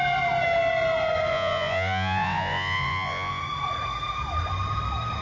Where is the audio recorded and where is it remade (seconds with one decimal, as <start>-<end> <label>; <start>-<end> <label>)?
0.0-1.3 recorded; 1.3-3.4 remade; 3.4-5.2 recorded